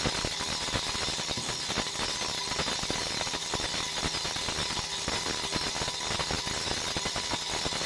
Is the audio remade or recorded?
recorded